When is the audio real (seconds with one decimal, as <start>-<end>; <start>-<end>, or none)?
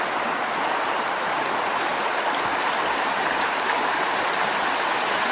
1.9-2.8